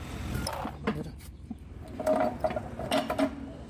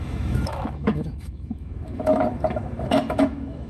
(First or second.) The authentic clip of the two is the first